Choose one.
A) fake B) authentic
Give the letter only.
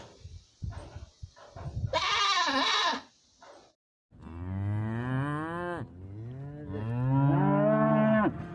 B